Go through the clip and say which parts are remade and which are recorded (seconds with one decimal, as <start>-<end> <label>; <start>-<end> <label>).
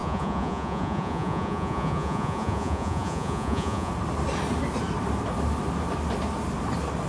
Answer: 0.0-3.9 remade; 3.9-7.1 recorded